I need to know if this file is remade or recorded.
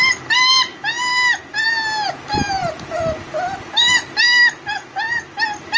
recorded